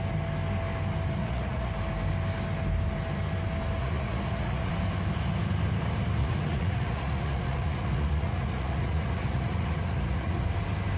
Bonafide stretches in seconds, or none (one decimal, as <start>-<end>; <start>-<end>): 0.0-1.2; 1.7-3.8; 4.7-6.2; 10.4-11.0

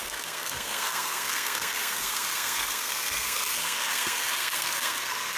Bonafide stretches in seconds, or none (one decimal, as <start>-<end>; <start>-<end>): none

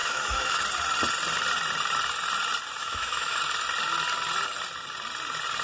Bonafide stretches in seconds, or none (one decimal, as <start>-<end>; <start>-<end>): 0.6-2.8; 3.4-5.6

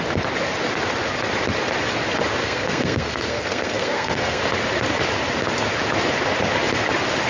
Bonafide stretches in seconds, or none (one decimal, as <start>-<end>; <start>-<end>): 0.0-2.4; 4.4-7.3

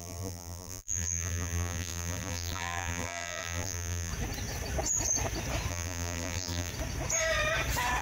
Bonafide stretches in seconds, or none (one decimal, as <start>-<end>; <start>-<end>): 4.1-5.7; 6.7-8.0

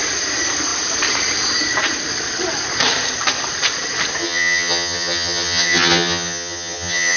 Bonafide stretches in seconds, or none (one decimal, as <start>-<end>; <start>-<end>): 0.0-4.2

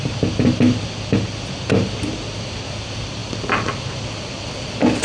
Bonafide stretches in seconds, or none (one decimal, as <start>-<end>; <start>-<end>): 0.0-5.0